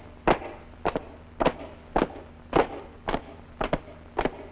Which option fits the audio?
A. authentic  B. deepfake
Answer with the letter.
A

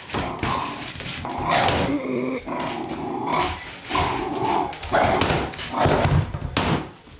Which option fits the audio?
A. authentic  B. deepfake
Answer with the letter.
A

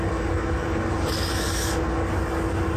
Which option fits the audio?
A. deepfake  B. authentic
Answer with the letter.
A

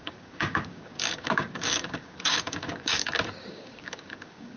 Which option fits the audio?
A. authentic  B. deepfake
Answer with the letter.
B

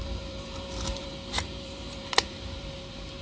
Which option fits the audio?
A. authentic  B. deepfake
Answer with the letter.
B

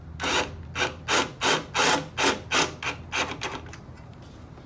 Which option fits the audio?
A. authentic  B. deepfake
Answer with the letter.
A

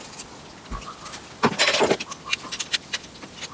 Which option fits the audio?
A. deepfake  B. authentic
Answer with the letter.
B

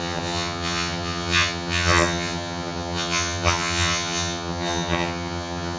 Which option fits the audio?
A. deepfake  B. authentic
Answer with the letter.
A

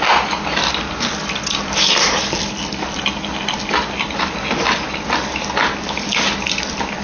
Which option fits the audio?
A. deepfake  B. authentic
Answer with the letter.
B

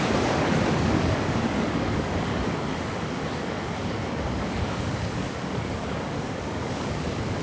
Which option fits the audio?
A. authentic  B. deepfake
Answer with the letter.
B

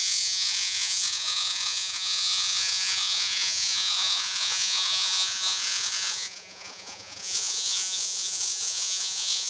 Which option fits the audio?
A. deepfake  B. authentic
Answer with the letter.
A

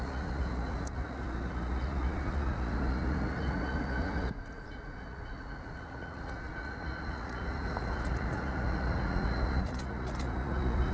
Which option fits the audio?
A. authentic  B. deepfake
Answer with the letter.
B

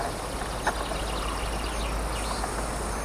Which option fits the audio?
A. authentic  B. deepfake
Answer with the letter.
A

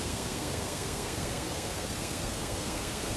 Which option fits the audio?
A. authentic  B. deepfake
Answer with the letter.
B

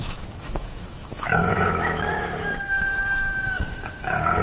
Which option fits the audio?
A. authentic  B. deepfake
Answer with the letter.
B